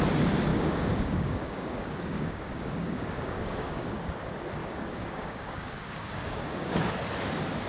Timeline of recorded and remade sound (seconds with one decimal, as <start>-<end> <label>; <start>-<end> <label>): 0.0-0.5 recorded; 0.5-3.9 remade; 3.9-4.6 recorded; 4.6-6.9 remade; 6.9-7.7 recorded